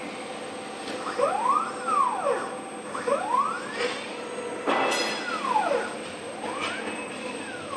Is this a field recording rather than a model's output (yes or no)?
yes